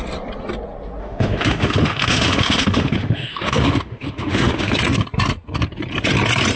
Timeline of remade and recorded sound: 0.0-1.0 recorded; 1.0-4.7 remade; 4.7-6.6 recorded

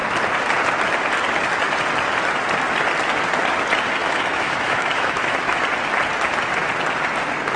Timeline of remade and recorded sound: 0.0-4.0 recorded; 4.0-5.6 remade; 5.6-7.6 recorded

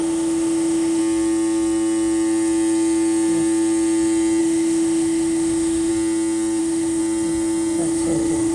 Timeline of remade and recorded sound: 0.0-1.0 remade; 1.0-4.4 recorded; 4.4-5.9 remade; 5.9-6.6 recorded; 6.6-7.0 remade; 7.0-7.8 recorded; 7.8-8.5 remade

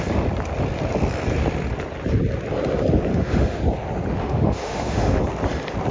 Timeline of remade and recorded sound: 0.0-3.1 recorded; 3.1-3.6 remade; 3.6-4.2 recorded; 4.2-5.2 remade; 5.2-5.9 recorded